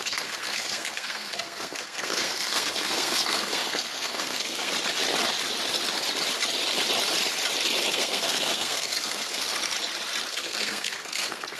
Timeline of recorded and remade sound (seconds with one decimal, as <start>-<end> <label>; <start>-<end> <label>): 0.0-4.7 remade; 4.7-7.9 recorded; 7.9-9.5 remade; 9.5-10.3 recorded; 10.3-11.6 remade